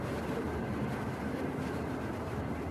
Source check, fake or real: real